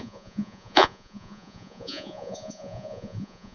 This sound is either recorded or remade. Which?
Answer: remade